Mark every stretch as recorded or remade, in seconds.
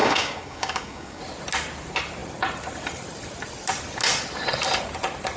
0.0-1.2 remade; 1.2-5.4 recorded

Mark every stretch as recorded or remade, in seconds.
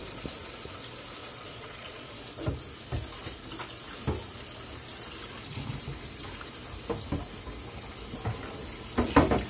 0.0-1.2 recorded; 1.2-2.1 remade; 2.1-9.5 recorded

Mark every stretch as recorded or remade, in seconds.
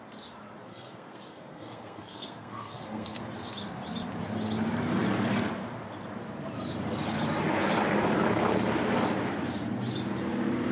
0.0-0.7 recorded; 0.7-3.2 remade; 3.2-10.7 recorded